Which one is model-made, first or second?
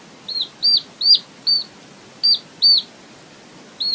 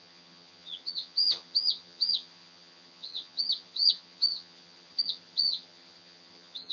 second